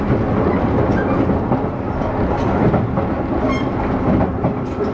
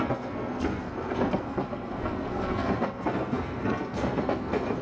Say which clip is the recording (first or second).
first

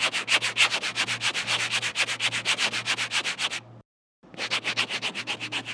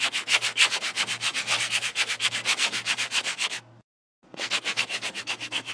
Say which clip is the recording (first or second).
first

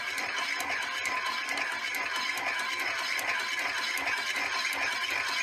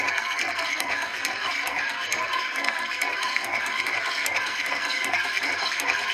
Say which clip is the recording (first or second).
first